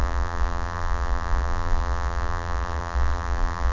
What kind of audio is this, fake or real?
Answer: fake